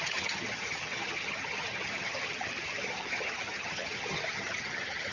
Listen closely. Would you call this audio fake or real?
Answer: fake